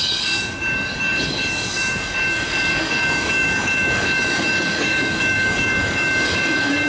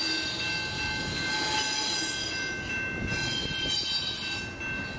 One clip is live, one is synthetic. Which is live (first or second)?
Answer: second